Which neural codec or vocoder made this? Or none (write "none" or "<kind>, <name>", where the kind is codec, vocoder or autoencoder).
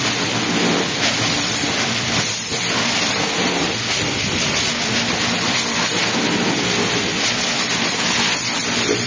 none